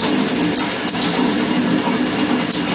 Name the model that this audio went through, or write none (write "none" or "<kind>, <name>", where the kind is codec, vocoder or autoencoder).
none